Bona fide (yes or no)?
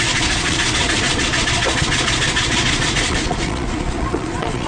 no